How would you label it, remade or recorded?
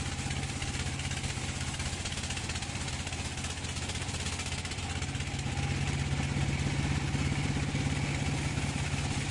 recorded